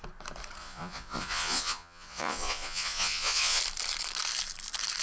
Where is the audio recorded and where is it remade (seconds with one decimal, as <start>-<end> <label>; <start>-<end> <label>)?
0.0-0.6 recorded; 0.6-3.6 remade; 3.6-5.0 recorded